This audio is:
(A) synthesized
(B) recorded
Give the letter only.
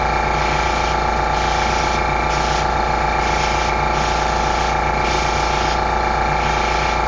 B